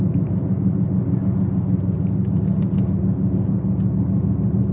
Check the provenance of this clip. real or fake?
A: real